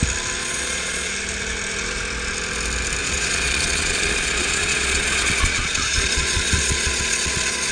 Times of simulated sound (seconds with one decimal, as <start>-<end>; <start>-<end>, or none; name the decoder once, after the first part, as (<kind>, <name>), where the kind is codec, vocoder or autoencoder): 0.4-1.1 (vocoder, Vocos); 3.0-7.7